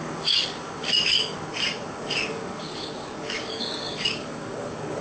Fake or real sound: fake